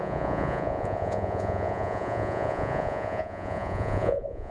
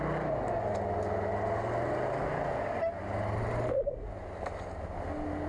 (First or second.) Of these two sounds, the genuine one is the second